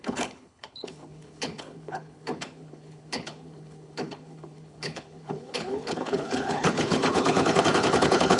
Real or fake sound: fake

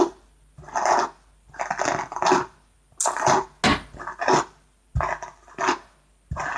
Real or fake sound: real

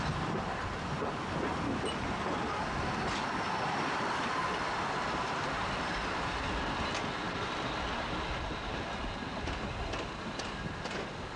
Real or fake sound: real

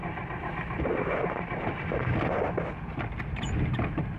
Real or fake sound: real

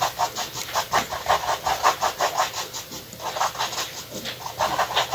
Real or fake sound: real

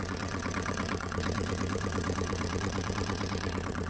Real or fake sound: fake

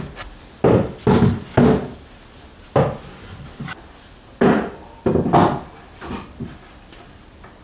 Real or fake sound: real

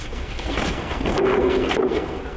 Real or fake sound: fake